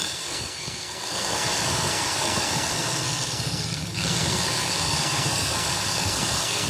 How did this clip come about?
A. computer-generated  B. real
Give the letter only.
A